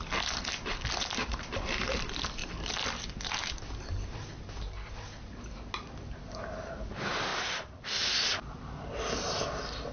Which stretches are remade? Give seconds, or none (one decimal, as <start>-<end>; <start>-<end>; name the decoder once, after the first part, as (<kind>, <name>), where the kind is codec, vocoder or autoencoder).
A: 0.0-2.4 (vocoder, BigVGAN v2); 6.1-9.9